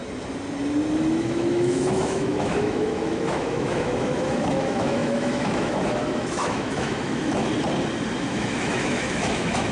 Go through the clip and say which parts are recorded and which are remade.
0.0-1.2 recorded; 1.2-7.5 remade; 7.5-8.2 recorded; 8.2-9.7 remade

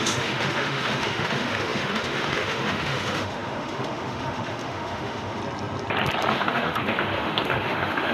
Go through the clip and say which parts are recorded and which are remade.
0.0-5.4 remade; 5.4-6.3 recorded; 6.3-8.1 remade

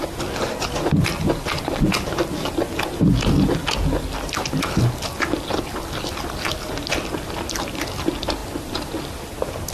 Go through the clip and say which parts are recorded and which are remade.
0.0-9.7 recorded

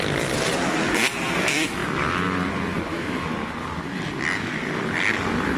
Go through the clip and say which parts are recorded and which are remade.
0.0-2.9 recorded; 2.9-3.5 remade; 3.5-5.6 recorded

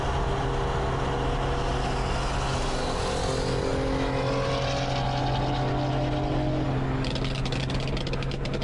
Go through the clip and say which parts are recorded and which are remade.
0.0-8.6 recorded

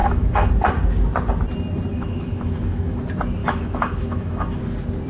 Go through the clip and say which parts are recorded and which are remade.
0.0-0.5 remade; 0.5-1.9 recorded; 1.9-3.0 remade; 3.0-3.4 recorded; 3.4-4.6 remade; 4.6-5.1 recorded

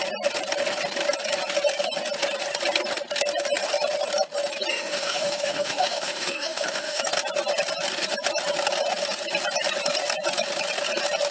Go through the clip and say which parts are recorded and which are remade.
0.0-4.7 recorded; 4.7-7.0 remade; 7.0-11.3 recorded